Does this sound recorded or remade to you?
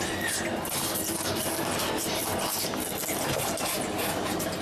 recorded